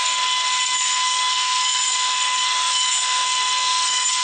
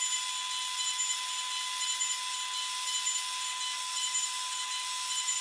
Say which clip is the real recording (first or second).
second